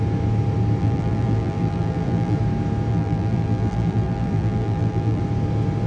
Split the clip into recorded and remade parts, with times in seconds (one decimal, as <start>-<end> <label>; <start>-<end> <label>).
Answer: 0.0-0.8 recorded; 0.8-2.4 remade; 2.4-2.9 recorded; 2.9-5.2 remade; 5.2-5.9 recorded